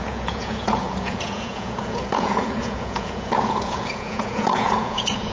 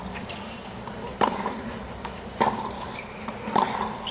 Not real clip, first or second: first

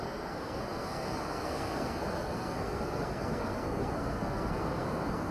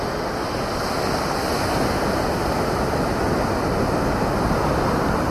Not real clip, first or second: first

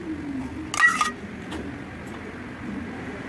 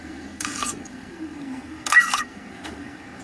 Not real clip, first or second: second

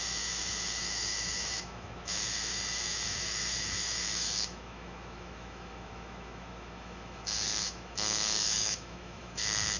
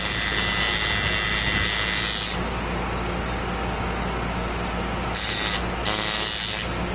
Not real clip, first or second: first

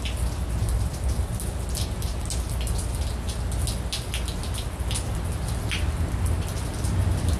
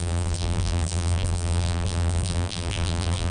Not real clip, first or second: second